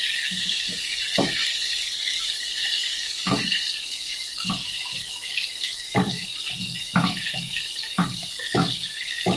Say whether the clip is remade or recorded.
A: remade